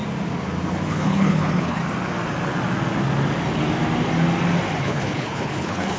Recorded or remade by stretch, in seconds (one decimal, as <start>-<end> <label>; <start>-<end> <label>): 0.0-0.9 recorded; 0.9-1.8 remade; 1.8-4.8 recorded; 4.8-6.0 remade